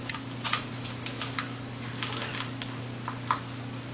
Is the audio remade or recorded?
recorded